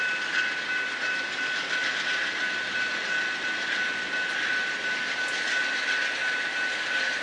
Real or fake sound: real